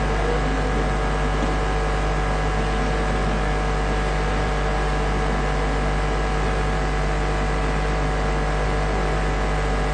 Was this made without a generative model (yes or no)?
yes